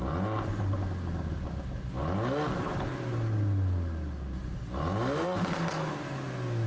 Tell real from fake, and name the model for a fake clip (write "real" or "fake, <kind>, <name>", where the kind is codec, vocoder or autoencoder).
real